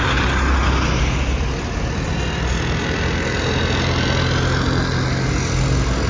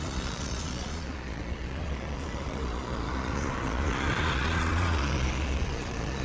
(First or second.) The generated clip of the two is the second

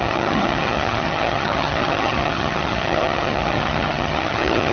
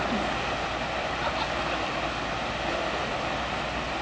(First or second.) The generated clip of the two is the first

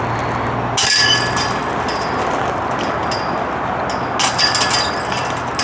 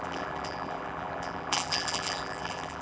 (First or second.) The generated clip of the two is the second